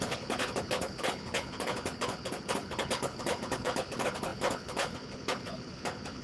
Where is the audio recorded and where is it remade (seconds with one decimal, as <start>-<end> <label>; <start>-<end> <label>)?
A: 0.0-6.2 remade